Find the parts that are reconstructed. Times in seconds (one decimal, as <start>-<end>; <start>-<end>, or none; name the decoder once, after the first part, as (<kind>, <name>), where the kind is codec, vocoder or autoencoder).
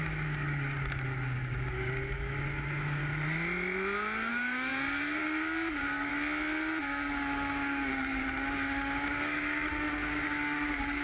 0.0-3.0 (codec, DAC); 4.3-6.1; 6.8-11.0